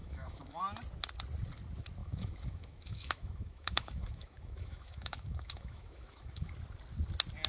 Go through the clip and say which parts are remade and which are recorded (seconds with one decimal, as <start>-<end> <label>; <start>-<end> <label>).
0.0-0.6 remade; 0.6-2.0 recorded; 2.0-6.5 remade; 6.5-7.5 recorded

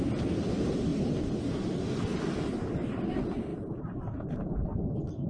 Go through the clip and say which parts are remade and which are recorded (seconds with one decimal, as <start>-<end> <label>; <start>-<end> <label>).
0.0-3.5 recorded; 3.5-4.8 remade; 4.8-5.3 recorded